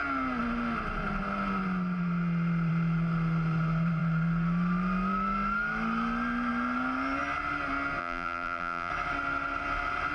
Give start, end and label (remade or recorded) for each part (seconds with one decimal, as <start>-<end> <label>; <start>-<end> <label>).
0.0-8.0 recorded; 8.0-8.9 remade; 8.9-10.1 recorded